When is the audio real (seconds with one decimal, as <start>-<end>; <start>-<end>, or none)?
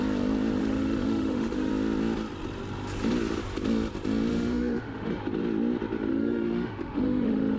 0.0-0.6; 1.7-4.3; 5.1-6.1